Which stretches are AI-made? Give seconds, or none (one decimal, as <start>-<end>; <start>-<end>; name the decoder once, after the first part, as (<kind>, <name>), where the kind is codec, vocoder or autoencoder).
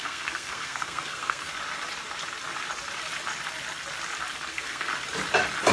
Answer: 0.0-1.5 (codec, SNAC); 4.5-4.9